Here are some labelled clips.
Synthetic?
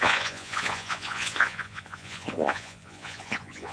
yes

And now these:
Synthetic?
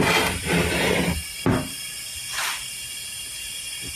no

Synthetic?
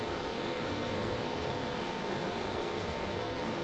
yes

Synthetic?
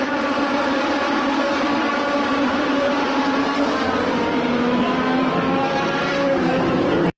yes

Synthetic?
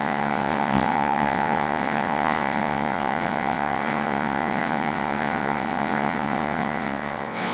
yes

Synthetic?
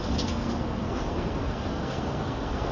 yes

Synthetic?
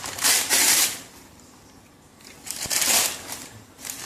yes